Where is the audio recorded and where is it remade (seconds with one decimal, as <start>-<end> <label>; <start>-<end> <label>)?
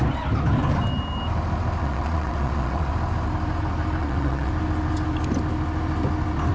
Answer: 0.0-1.8 recorded; 1.8-2.9 remade; 2.9-4.0 recorded; 4.0-4.5 remade; 4.5-6.5 recorded